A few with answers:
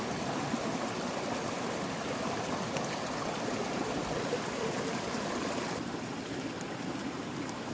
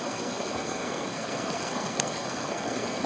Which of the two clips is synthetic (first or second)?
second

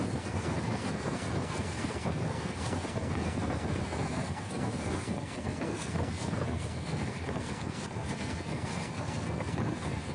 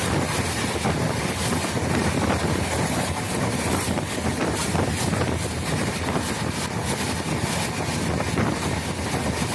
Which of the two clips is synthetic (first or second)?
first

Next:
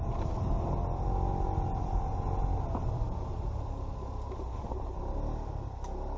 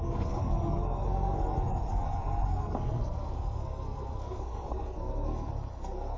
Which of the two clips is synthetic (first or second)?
second